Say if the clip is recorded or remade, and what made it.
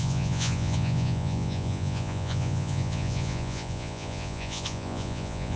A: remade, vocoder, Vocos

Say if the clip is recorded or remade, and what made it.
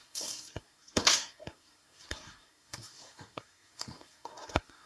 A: remade, codec, SNAC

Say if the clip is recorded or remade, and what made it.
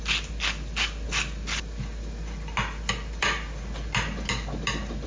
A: recorded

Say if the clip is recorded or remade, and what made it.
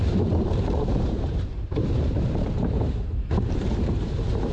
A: remade, vocoder, BigVGAN v2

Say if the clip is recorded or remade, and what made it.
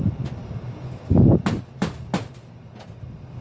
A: recorded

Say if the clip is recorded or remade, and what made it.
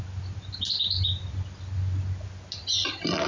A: recorded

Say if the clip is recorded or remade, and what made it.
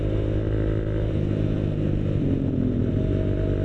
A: recorded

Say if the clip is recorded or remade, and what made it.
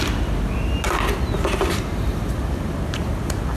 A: recorded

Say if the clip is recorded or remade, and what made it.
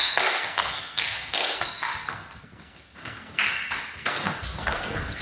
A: remade, codec, SNAC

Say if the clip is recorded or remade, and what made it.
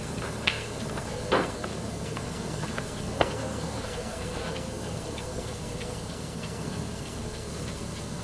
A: remade, codec, SNAC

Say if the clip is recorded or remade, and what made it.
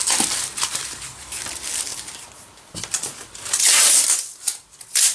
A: recorded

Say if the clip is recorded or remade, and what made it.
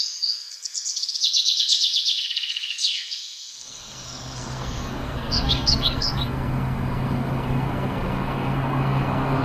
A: remade, codec, SNAC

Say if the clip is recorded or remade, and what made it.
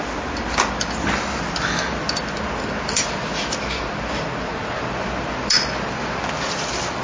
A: recorded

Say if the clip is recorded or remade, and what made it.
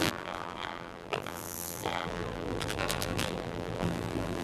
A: remade, vocoder, BigVGAN v2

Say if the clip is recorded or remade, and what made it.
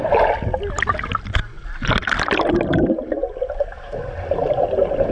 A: recorded